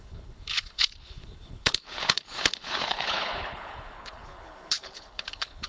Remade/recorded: remade